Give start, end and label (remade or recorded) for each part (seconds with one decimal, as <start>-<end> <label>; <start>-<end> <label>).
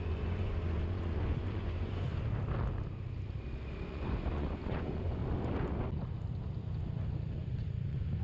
0.0-2.1 remade; 2.1-3.9 recorded; 3.9-5.2 remade; 5.2-7.3 recorded; 7.3-8.2 remade